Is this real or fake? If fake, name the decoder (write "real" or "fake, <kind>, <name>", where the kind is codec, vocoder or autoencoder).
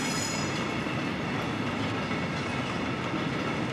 real